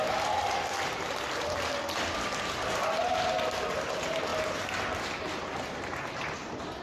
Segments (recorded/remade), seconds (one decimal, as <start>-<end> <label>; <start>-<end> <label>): 0.0-6.8 recorded